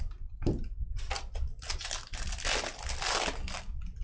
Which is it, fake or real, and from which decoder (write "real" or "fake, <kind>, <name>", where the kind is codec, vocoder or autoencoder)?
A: real